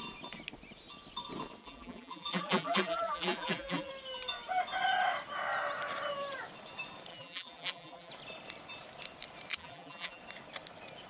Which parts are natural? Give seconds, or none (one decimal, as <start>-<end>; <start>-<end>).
0.0-1.6; 3.9-7.1; 8.1-9.6; 10.2-11.1